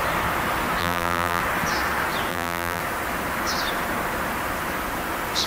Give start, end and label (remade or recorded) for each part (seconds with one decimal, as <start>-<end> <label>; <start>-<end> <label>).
0.0-0.8 recorded; 0.8-1.4 remade; 1.4-2.3 recorded; 2.3-2.8 remade; 2.8-5.5 recorded